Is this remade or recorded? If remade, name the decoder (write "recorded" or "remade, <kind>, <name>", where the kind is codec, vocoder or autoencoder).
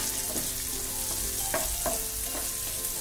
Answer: recorded